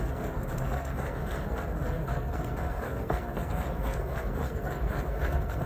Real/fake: fake